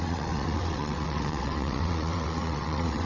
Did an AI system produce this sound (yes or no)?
yes